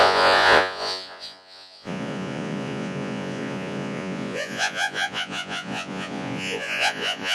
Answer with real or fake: fake